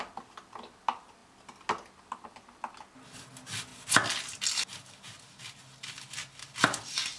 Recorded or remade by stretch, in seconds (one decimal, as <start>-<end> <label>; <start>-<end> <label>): 0.0-7.2 recorded